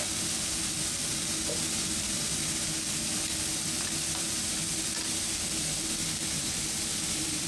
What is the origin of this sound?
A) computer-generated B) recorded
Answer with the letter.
A